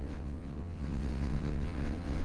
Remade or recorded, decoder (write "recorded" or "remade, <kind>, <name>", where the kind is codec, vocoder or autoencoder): remade, vocoder, WaveNeXt